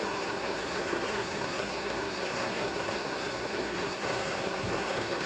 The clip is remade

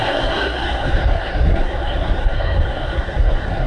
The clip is remade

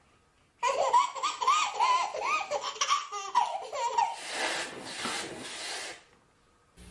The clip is recorded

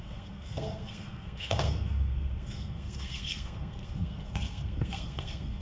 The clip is remade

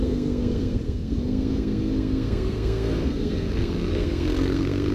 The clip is remade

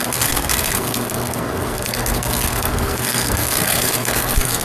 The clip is remade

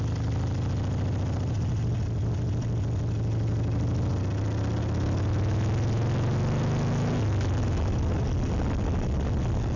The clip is recorded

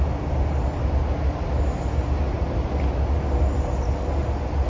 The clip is recorded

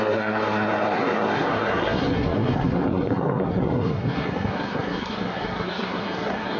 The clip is remade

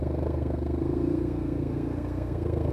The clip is remade